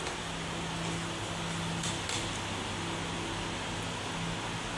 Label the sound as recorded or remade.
recorded